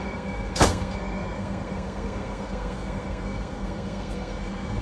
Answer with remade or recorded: remade